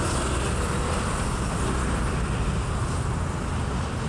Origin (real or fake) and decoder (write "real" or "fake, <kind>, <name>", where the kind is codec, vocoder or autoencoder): real